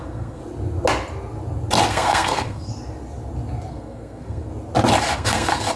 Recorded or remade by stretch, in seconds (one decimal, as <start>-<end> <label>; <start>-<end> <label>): 0.0-0.4 remade; 0.4-1.9 recorded; 1.9-2.7 remade; 2.7-3.7 recorded; 3.7-4.5 remade; 4.5-5.0 recorded; 5.0-5.8 remade